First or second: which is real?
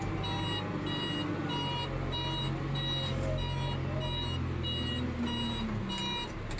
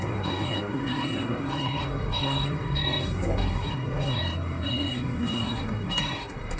first